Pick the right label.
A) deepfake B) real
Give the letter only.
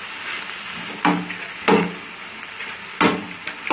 B